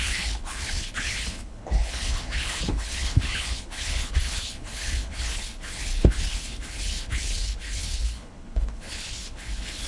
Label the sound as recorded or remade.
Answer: remade